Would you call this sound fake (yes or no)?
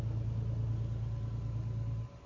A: no